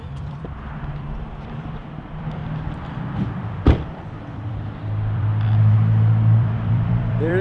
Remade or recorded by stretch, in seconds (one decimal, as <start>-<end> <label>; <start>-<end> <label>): 0.0-2.4 remade; 2.4-3.3 recorded; 3.3-7.4 remade